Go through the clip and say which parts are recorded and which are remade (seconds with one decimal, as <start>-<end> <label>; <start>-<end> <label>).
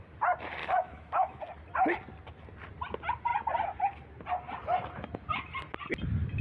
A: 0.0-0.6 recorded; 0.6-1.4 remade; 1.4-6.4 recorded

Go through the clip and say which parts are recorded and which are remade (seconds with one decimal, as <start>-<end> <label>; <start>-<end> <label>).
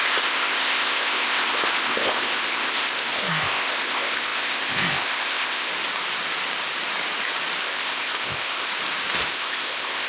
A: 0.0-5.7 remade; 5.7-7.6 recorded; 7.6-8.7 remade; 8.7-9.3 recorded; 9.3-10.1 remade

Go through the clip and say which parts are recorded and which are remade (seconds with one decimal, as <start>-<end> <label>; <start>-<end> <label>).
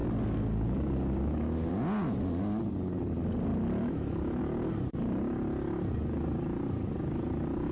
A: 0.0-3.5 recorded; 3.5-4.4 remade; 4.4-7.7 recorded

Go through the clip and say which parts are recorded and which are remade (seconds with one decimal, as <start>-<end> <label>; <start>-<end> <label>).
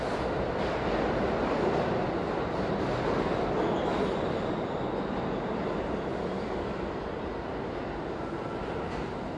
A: 0.0-9.4 recorded